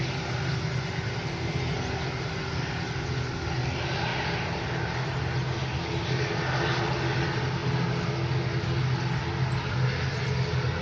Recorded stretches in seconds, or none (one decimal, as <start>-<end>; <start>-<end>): 0.0-4.1; 5.2-10.8